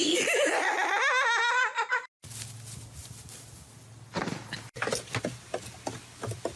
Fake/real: real